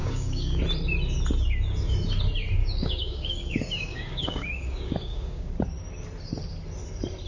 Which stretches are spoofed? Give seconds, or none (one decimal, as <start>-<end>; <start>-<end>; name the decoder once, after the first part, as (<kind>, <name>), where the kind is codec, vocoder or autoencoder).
0.0-0.6 (codec, DAC); 2.6-5.5